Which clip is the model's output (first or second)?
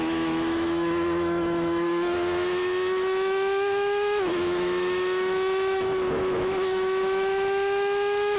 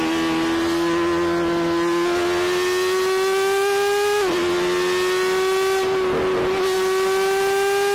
first